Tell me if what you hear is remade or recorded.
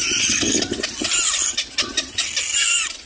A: recorded